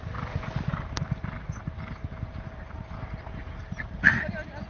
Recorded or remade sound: recorded